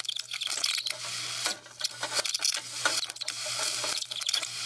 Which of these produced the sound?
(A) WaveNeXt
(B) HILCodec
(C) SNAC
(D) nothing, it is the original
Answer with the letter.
D